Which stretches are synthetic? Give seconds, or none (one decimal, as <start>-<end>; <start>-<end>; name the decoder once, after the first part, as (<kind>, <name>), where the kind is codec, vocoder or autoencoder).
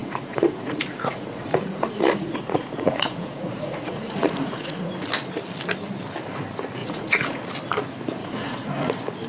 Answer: 0.0-4.9 (vocoder, Vocos); 6.8-7.4; 8.2-8.9